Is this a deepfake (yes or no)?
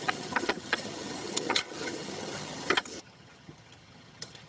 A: yes